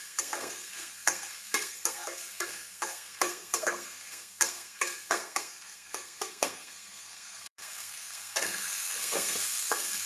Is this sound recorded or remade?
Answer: remade